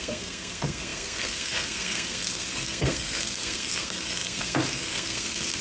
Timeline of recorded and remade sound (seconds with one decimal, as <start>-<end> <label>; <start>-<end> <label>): 0.0-5.6 remade